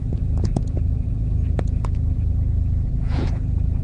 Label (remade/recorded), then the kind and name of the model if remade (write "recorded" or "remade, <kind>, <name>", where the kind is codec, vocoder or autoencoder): remade, vocoder, Vocos